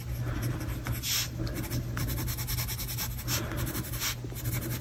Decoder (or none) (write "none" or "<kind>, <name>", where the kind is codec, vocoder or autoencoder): none